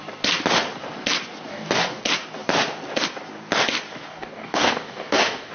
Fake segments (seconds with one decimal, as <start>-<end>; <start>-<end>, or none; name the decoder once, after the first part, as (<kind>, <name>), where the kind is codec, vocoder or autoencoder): 1.5-2.0 (codec, DAC); 4.1-5.5

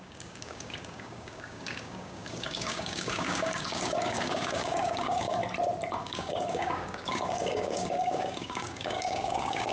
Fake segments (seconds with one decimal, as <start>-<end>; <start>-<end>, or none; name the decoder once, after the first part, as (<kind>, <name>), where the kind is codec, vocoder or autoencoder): 0.0-5.4 (codec, DAC); 6.0-9.7